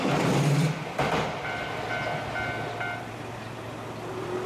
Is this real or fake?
real